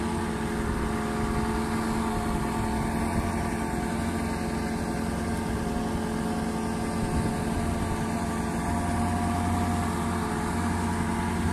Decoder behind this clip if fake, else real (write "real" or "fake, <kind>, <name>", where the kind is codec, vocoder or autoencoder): real